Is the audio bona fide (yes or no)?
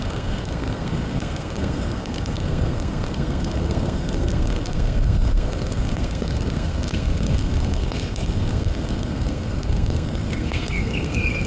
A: no